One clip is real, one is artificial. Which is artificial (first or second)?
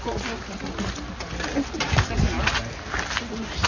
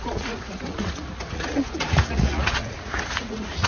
second